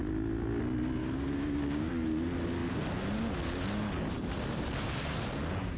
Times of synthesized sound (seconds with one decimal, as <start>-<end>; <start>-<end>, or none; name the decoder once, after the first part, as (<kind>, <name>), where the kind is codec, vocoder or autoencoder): 1.0-1.9 (codec, DAC)